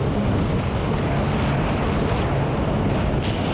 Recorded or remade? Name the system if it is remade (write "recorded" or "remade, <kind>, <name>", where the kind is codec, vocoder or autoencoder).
recorded